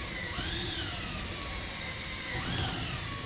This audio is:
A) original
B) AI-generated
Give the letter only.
B